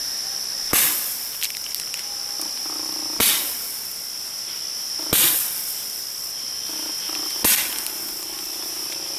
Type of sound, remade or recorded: recorded